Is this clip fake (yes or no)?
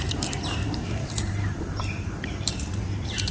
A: yes